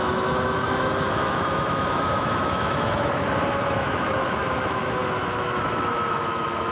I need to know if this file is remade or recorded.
remade